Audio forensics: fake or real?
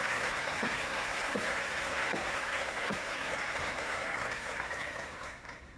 fake